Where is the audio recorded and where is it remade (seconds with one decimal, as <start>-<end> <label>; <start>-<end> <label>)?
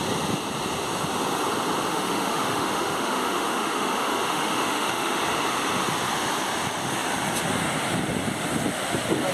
0.0-1.9 recorded; 1.9-5.2 remade; 5.2-9.3 recorded